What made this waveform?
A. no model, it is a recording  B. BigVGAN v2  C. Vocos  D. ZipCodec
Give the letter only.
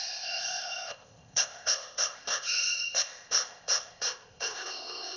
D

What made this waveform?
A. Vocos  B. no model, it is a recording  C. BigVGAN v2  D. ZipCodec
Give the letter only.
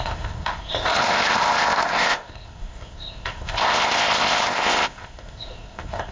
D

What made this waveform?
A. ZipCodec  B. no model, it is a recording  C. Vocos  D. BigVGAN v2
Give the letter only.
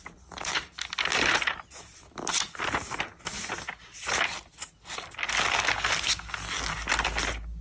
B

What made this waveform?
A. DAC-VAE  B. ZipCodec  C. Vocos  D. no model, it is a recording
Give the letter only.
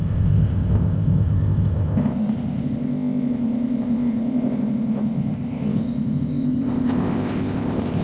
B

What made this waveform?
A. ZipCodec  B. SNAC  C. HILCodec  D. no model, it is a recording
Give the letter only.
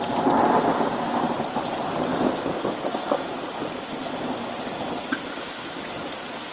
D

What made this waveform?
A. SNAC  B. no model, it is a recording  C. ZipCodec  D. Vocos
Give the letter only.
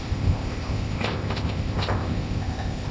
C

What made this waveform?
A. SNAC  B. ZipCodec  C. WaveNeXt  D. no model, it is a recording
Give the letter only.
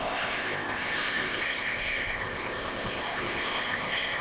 B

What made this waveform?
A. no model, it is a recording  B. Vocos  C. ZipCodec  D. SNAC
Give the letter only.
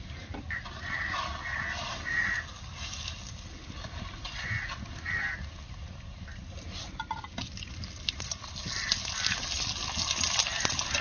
A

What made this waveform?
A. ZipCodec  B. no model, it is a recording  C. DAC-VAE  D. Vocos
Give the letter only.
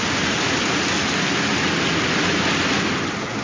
B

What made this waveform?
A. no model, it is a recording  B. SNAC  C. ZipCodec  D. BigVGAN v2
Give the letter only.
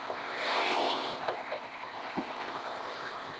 C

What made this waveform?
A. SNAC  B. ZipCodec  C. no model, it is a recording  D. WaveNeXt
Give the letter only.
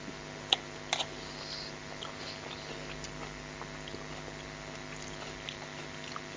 C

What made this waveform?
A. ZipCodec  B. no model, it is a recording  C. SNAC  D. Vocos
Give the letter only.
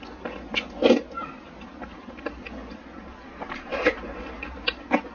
B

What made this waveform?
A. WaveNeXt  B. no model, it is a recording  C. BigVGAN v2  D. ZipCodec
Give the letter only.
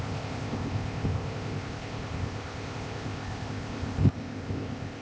D